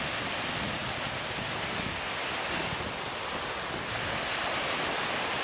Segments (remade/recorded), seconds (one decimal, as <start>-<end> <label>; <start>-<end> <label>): 0.0-5.4 recorded